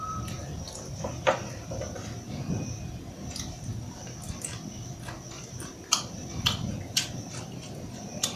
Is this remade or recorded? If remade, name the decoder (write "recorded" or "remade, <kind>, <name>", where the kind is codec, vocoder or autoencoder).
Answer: remade, vocoder, BigVGAN v2